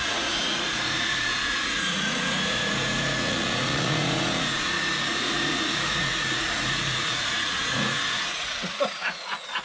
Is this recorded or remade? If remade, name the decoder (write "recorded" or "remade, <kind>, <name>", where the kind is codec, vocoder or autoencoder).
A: remade, vocoder, Vocos